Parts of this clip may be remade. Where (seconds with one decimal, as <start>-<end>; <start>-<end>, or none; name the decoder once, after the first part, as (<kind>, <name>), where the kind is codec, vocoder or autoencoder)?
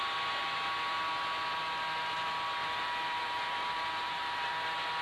2.6-4.5 (vocoder, BigVGAN v2)